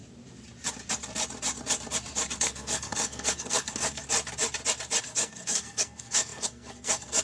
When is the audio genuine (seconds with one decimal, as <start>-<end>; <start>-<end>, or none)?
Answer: 0.0-2.4; 4.0-5.0

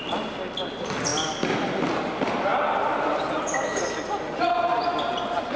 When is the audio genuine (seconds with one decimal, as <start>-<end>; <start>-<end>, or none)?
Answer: 0.0-5.6